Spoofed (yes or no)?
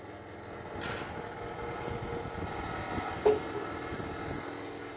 no